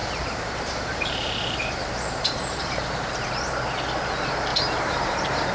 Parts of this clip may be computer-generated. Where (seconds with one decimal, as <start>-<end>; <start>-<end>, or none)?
0.0-3.3; 4.5-5.5